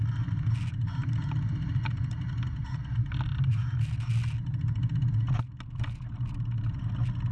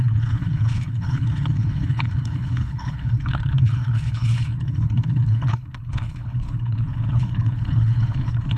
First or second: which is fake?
second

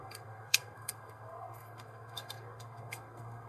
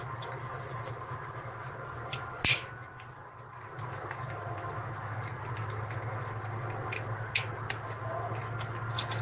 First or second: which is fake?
first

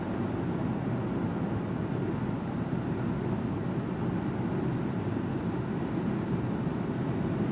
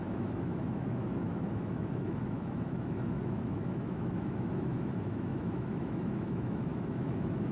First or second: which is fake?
second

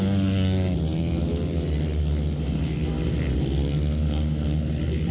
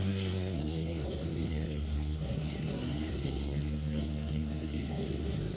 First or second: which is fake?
second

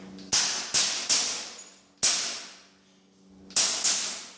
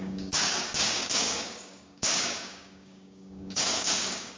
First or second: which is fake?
second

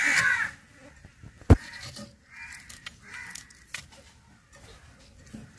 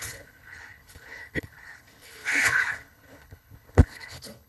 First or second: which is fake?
second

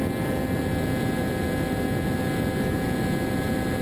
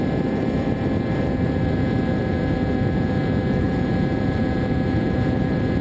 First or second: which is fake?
second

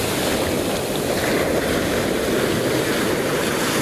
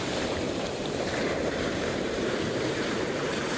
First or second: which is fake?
second